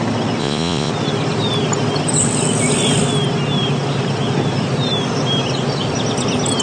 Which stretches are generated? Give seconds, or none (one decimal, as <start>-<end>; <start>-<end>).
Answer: 0.4-0.9